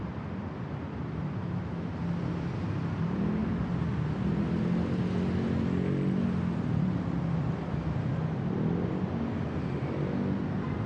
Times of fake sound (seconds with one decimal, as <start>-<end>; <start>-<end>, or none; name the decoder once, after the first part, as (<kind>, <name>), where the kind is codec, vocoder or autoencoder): 1.4-1.9 (autoencoder, DAC-VAE)